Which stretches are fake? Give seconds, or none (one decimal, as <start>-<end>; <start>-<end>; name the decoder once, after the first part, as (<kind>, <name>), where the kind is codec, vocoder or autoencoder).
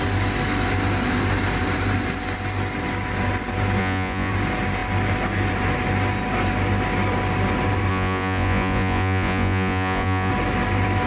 3.8-4.3 (vocoder, Vocos); 7.9-10.3